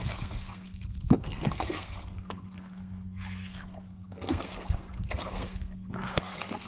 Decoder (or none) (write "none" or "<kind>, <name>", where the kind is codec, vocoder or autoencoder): codec, SNAC